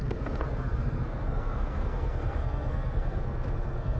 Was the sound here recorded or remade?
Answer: remade